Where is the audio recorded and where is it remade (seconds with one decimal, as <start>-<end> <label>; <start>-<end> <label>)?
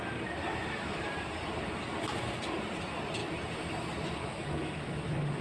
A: 0.0-0.5 recorded; 0.5-1.0 remade; 1.0-4.2 recorded; 4.2-5.4 remade